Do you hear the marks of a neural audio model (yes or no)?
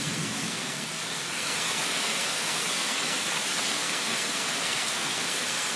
yes